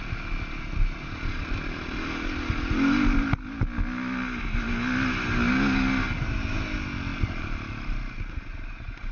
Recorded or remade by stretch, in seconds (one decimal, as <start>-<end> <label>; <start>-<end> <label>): 0.0-9.1 recorded